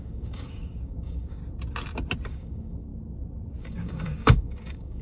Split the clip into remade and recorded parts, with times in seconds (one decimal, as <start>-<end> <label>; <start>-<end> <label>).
0.0-1.4 remade; 1.4-2.3 recorded; 2.3-2.9 remade; 2.9-3.6 recorded; 3.6-5.0 remade